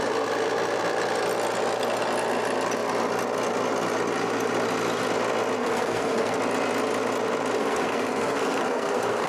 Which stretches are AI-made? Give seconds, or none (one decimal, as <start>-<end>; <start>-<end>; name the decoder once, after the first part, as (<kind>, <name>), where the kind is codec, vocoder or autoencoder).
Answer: 5.6-6.4 (codec, SNAC); 7.6-9.3